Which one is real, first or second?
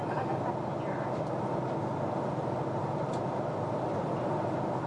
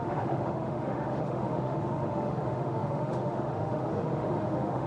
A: first